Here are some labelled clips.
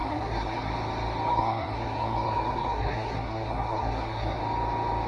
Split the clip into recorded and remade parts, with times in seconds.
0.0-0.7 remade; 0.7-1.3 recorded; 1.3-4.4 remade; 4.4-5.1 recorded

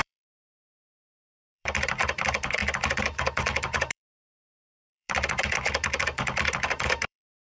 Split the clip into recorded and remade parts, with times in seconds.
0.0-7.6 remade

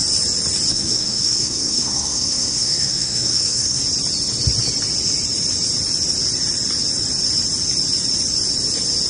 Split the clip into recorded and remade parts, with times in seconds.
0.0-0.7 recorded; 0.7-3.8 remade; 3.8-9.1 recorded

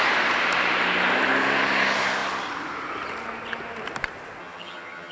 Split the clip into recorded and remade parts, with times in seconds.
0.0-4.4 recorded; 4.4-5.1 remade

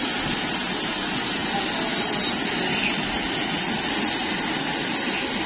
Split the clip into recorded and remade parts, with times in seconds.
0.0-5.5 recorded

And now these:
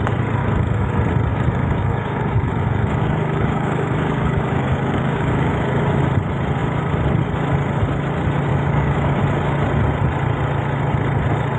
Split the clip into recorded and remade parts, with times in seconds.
0.0-0.4 recorded; 0.4-0.9 remade; 0.9-1.3 recorded; 1.3-6.0 remade; 6.0-8.5 recorded; 8.5-9.2 remade; 9.2-11.6 recorded

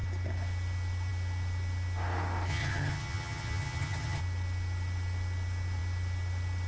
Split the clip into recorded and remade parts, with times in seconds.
0.0-2.5 recorded; 2.5-4.2 remade; 4.2-6.7 recorded

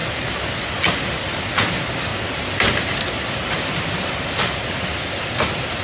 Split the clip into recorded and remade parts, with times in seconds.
0.0-5.8 recorded